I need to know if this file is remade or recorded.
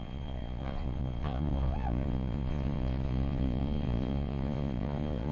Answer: remade